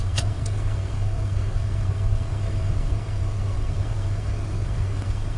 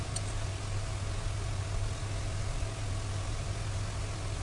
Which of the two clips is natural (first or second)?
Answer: second